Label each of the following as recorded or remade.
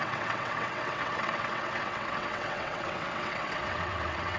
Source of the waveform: remade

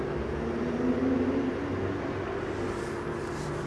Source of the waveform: recorded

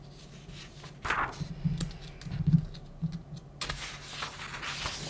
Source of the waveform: recorded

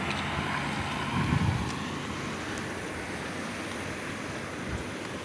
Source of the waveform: recorded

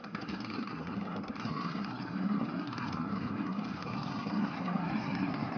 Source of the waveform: remade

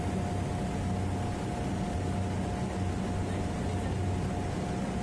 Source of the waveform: recorded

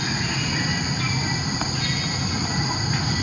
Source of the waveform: recorded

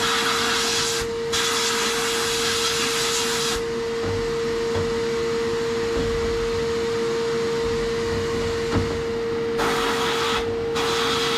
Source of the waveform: recorded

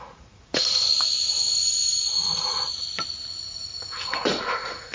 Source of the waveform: remade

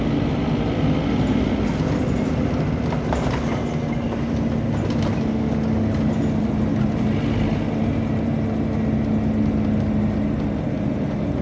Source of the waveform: recorded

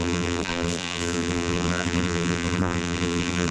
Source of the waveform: remade